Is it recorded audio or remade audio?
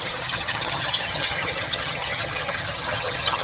remade